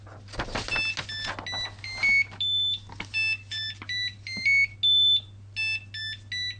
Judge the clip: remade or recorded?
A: recorded